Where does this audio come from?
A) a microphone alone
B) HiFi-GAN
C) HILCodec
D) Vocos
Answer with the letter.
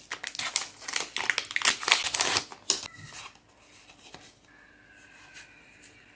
A